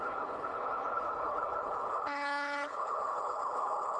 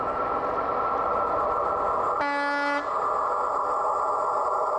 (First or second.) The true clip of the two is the second